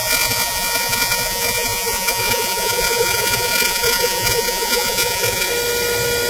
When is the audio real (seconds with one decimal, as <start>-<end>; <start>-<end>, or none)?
5.5-6.3